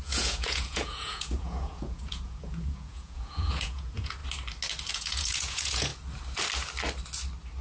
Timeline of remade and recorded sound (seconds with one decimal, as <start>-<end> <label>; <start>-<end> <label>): 0.0-4.2 remade; 4.2-4.9 recorded; 4.9-5.9 remade; 5.9-7.6 recorded